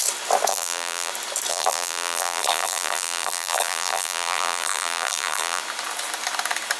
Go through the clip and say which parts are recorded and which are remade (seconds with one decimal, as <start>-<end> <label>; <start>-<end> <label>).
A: 0.0-0.5 recorded; 0.5-1.1 remade; 1.1-1.5 recorded; 1.5-5.6 remade; 5.6-6.8 recorded